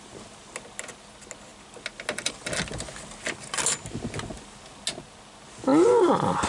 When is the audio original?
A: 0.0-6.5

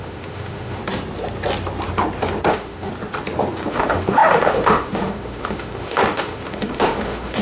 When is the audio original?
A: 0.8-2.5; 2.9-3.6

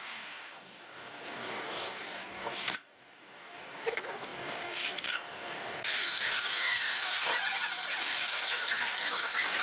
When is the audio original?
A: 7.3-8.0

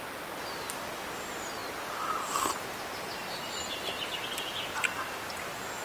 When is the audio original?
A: 0.0-5.8